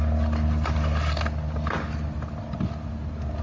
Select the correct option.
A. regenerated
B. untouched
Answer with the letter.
B